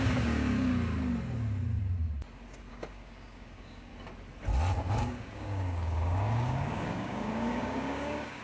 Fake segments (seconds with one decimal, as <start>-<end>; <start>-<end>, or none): 0.0-0.7; 2.7-3.9; 4.8-8.4